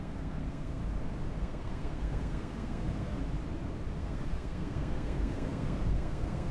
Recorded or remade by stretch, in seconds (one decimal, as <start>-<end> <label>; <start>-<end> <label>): 0.0-0.8 remade; 0.8-1.4 recorded; 1.4-3.2 remade; 3.2-4.0 recorded; 4.0-6.5 remade